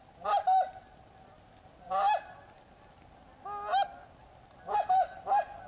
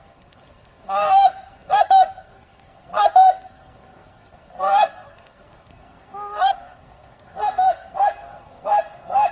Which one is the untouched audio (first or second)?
first